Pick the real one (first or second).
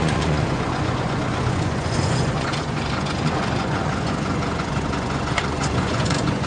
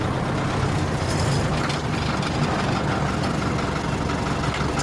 second